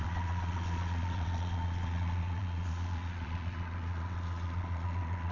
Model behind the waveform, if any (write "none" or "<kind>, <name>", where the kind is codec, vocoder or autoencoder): vocoder, Vocos